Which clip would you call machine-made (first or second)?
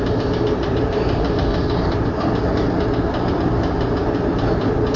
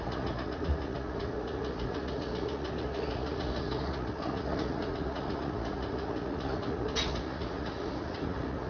second